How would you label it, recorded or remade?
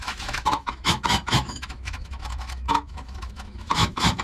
remade